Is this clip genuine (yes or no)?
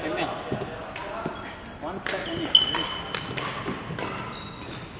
yes